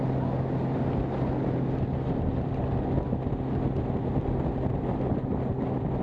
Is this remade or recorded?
recorded